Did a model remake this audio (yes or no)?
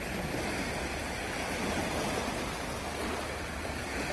no